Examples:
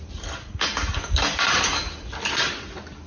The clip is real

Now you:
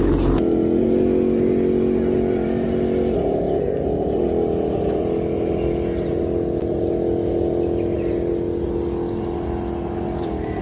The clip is real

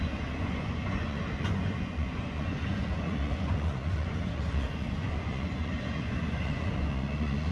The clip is fake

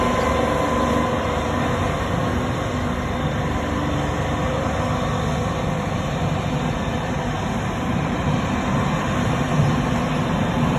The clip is real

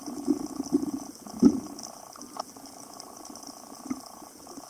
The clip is real